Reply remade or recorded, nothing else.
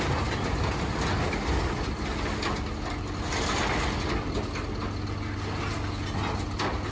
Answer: recorded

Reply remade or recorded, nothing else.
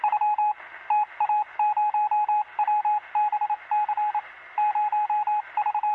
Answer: recorded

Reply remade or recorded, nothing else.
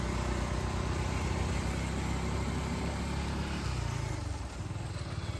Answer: recorded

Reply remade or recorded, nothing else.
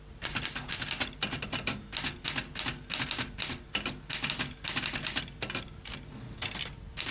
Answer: recorded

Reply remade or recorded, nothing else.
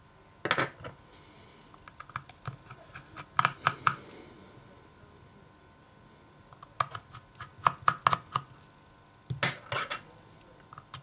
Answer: recorded